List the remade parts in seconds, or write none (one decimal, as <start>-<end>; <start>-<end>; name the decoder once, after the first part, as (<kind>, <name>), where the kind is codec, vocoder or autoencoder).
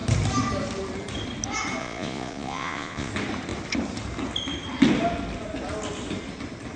1.8-3.1 (vocoder, Vocos)